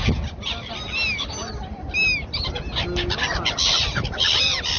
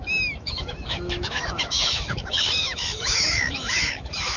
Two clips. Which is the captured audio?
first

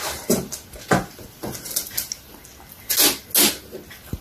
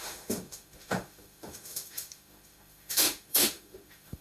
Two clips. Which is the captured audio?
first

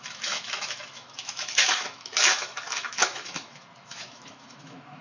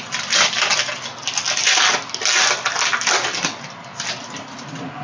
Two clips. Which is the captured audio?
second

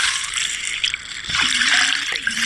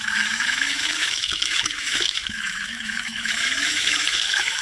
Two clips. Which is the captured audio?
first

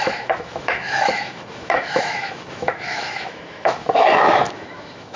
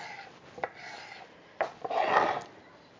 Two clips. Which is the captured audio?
second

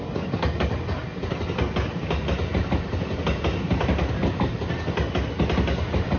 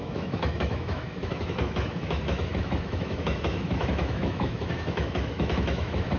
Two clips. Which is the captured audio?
first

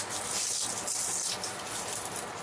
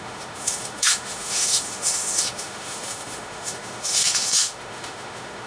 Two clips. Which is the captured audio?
first